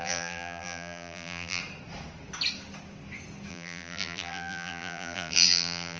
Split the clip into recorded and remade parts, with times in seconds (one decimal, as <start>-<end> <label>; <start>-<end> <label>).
0.0-1.6 remade; 1.6-3.5 recorded; 3.5-6.0 remade